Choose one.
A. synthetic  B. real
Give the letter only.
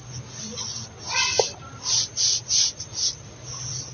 B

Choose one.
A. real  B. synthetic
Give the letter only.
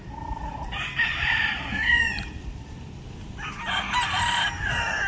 A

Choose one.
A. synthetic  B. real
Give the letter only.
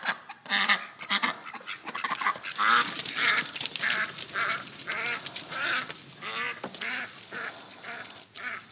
B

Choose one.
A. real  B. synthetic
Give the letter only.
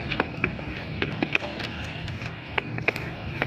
B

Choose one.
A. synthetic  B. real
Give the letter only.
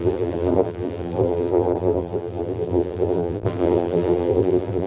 A